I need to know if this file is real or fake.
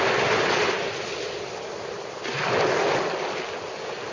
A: real